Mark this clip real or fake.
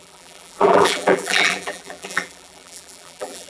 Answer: fake